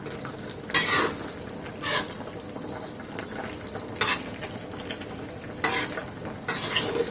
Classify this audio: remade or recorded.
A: recorded